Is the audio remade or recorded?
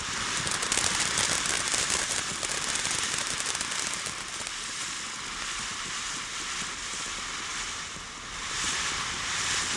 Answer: recorded